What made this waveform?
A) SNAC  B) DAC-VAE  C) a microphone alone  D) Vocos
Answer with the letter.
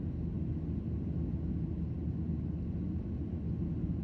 C